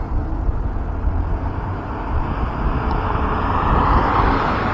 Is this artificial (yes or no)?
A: no